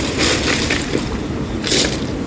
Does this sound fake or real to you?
fake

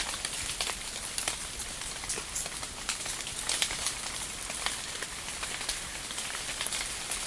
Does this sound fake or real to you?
real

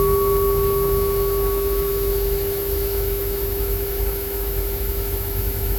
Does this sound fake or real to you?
fake